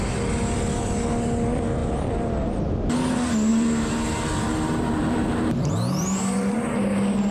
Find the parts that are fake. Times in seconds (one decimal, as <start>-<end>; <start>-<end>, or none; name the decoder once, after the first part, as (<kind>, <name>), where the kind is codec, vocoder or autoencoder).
3.5-5.7 (vocoder, BigVGAN v2)